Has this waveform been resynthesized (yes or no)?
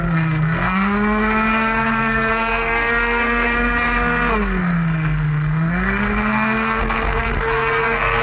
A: yes